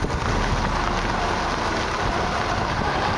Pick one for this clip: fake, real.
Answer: real